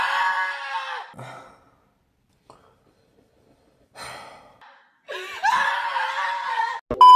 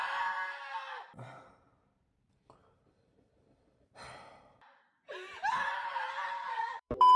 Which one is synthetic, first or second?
second